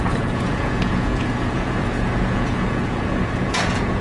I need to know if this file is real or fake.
fake